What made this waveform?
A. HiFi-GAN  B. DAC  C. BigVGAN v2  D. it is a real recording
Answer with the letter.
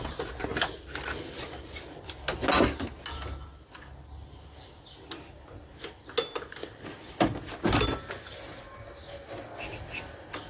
D